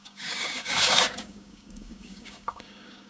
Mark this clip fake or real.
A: fake